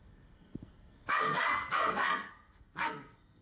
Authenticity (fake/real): fake